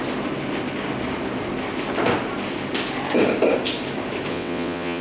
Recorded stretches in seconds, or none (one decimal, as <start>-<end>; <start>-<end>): 0.0-4.3